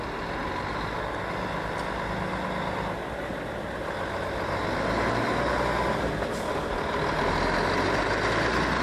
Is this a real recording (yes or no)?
yes